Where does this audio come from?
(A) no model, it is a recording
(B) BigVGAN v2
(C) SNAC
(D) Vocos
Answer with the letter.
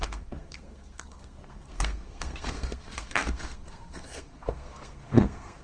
C